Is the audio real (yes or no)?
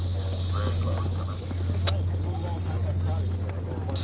yes